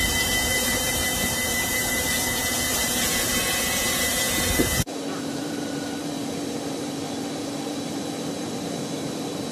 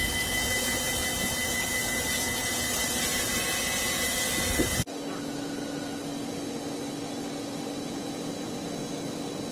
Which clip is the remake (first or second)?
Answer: first